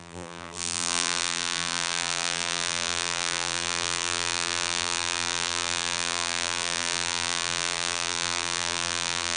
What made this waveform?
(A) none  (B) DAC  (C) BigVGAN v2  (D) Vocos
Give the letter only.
C